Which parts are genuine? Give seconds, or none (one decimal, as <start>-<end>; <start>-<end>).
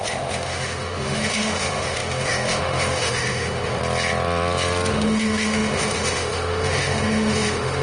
3.8-4.9